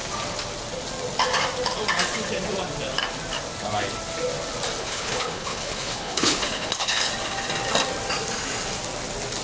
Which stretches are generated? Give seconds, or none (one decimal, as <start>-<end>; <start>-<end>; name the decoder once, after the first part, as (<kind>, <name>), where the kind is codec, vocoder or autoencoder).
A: 4.8-7.1 (codec, HILCodec)